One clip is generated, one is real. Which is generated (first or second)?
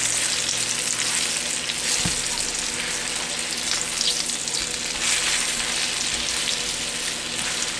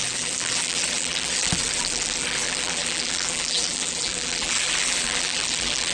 second